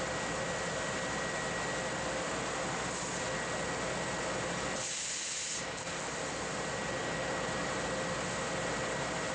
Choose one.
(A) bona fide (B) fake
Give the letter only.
A